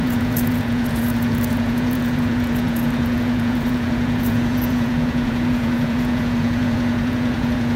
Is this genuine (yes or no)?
no